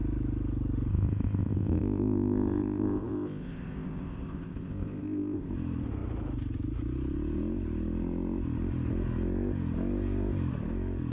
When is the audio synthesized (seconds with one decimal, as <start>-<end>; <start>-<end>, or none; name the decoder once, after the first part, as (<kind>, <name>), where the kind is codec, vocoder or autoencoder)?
0.9-5.5 (codec, ZipCodec)